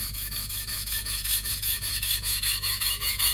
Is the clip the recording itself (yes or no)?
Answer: no